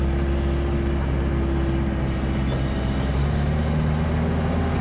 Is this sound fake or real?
real